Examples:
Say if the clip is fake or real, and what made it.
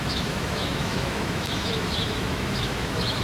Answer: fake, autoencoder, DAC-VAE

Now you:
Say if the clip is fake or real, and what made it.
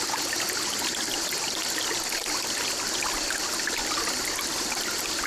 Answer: real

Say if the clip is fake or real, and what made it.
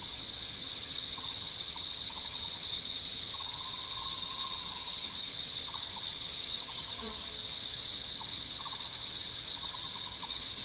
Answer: fake, vocoder, HiFi-GAN